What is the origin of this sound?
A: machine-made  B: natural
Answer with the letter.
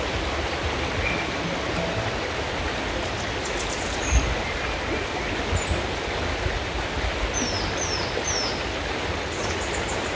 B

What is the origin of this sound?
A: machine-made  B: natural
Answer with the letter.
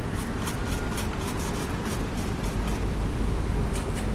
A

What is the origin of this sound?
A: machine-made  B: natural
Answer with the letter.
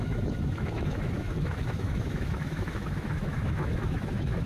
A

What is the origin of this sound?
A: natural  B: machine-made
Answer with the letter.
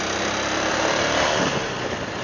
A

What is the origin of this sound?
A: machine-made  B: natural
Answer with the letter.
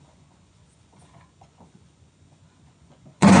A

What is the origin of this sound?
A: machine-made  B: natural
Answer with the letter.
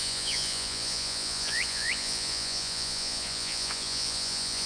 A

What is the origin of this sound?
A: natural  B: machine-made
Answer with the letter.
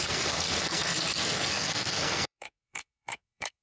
B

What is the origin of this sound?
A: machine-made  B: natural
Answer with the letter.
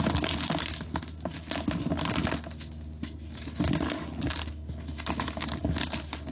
B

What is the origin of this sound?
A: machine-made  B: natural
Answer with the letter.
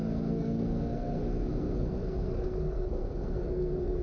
A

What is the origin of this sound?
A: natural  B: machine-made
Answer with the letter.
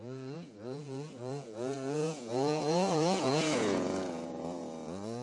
B